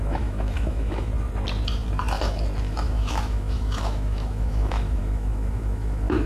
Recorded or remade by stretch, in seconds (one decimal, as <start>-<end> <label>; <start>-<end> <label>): 0.0-1.1 remade; 1.1-2.6 recorded; 2.6-6.3 remade